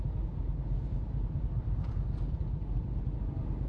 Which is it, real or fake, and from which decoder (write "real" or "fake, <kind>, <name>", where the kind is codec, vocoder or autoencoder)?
real